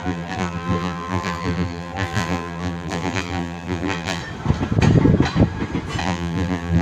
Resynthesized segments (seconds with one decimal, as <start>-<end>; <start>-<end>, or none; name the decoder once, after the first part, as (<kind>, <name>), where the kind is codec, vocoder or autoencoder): 0.0-4.2 (vocoder, BigVGAN v2); 6.0-6.8